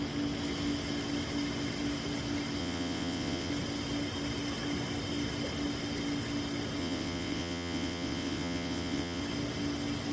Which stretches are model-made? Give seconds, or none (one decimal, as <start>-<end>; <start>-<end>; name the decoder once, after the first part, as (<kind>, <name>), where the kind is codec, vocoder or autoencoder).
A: 2.6-3.5 (vocoder, WaveNeXt); 6.8-9.2